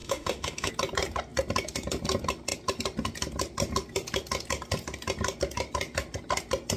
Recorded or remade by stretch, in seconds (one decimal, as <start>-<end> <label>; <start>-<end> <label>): 0.0-0.7 remade; 0.7-6.8 recorded